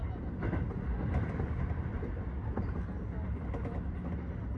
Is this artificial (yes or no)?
no